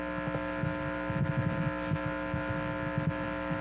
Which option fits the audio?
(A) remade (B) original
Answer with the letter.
B